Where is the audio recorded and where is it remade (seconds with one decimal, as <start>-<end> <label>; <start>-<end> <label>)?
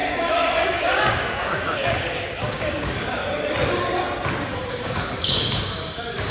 0.0-3.2 remade; 3.2-4.7 recorded; 4.7-6.3 remade